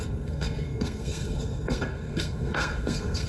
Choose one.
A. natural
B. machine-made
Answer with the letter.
B